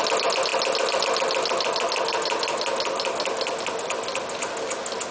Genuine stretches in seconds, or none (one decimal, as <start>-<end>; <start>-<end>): 0.0-5.1

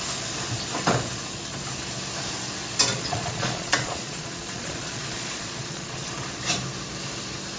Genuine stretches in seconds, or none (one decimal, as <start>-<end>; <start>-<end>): 0.0-2.9; 6.1-7.6

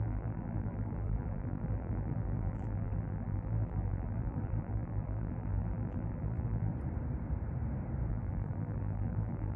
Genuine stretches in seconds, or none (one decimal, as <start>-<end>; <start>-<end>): 6.7-8.1

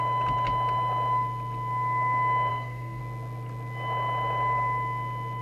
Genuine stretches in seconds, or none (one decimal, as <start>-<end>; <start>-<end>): 0.0-2.5; 3.0-5.4

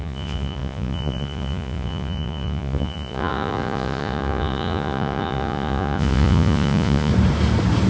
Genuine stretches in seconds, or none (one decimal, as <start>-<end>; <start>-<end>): 7.1-7.9

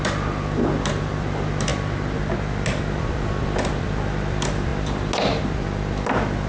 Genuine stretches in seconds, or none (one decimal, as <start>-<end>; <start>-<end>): 0.0-6.5

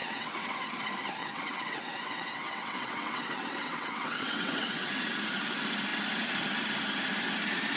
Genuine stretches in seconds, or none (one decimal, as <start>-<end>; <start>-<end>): 0.6-1.2; 4.9-7.8

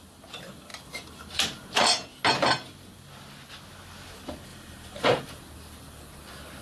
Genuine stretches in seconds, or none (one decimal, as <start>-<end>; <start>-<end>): 0.0-4.5; 5.2-6.6